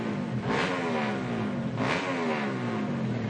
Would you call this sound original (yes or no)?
yes